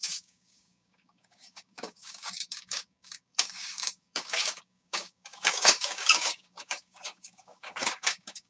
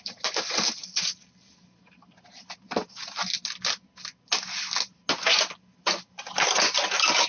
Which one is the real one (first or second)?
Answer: second